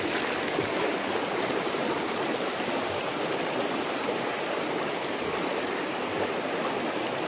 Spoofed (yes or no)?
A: no